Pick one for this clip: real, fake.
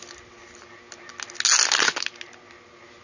real